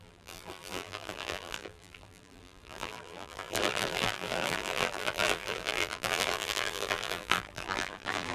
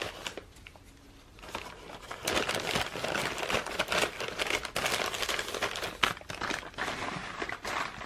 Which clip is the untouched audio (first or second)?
second